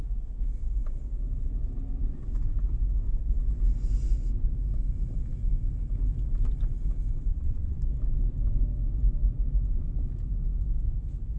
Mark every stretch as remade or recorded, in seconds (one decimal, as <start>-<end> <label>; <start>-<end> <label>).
0.0-7.3 recorded; 7.3-7.9 remade; 7.9-11.4 recorded